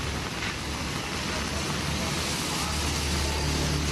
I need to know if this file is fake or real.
real